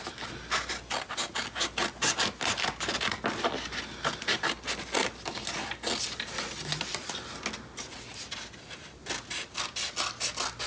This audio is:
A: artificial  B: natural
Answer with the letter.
B